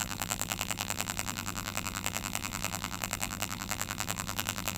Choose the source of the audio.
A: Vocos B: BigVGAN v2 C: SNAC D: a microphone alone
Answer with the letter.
B